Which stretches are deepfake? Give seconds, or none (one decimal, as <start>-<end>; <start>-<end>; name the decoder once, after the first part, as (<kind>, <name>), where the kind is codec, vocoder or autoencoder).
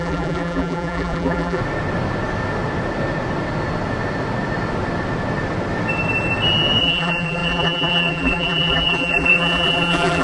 0.0-1.6 (vocoder, BigVGAN v2); 6.8-10.2